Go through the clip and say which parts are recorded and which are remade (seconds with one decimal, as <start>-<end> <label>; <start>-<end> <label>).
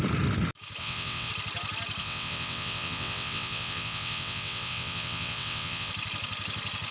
0.0-0.8 recorded; 0.8-1.3 remade; 1.3-2.0 recorded; 2.0-5.9 remade; 5.9-6.9 recorded